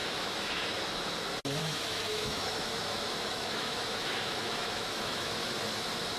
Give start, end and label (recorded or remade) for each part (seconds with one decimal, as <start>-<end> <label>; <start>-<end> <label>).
0.0-0.8 remade; 0.8-1.6 recorded; 1.6-5.3 remade; 5.3-6.2 recorded